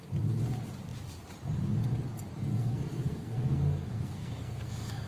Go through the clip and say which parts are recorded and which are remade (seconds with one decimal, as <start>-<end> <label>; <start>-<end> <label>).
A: 0.0-2.5 recorded; 2.5-5.1 remade